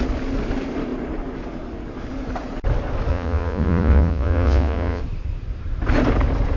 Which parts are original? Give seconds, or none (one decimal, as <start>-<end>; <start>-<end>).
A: 0.0-3.1; 5.0-6.6